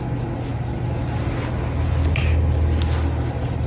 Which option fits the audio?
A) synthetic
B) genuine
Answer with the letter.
B